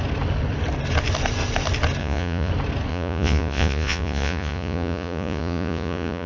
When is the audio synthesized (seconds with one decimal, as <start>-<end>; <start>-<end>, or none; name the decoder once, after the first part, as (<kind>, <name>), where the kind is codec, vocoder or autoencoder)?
2.0-2.5 (vocoder, Vocos); 2.9-6.3